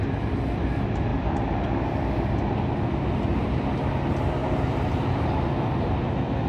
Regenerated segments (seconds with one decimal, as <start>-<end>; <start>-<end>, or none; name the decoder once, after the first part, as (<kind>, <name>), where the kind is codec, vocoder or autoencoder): 3.3-3.8 (vocoder, BigVGAN v2); 4.4-5.3

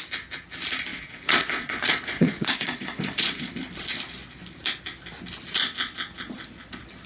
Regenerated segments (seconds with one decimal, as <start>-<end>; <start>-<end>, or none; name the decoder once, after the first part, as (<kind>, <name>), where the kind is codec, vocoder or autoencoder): 0.9-3.5 (vocoder, Vocos)

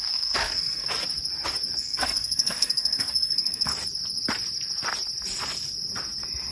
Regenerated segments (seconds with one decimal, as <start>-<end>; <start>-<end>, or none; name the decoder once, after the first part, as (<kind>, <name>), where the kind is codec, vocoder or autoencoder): 0.0-0.9 (codec, SNAC); 1.8-3.7

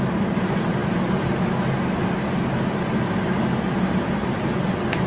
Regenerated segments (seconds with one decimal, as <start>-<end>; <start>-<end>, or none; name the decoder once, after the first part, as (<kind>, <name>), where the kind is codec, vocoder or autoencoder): 0.0-5.1 (vocoder, BigVGAN v2)